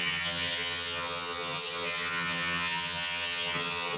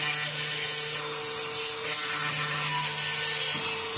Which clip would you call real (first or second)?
second